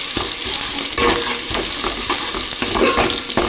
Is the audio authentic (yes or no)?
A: yes